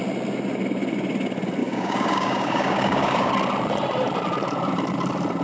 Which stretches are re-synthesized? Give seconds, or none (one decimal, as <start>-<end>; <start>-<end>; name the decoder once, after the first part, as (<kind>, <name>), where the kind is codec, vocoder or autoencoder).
1.6-3.3 (codec, DAC)